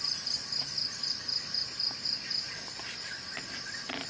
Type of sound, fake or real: real